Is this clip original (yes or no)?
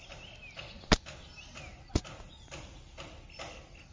yes